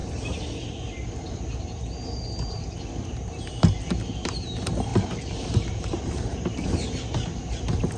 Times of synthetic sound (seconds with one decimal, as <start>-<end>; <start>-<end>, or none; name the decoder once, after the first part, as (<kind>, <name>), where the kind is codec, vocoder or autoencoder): 4.9-6.7 (vocoder, BigVGAN v2)